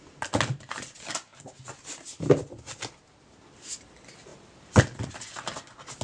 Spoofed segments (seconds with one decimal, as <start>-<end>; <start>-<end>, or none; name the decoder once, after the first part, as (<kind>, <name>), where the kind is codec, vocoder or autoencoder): none